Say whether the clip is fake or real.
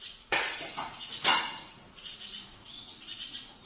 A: fake